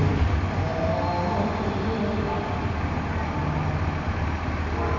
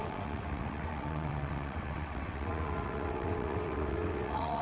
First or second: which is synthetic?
second